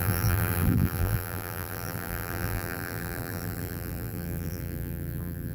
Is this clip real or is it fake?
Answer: fake